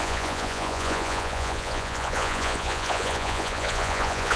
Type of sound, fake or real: fake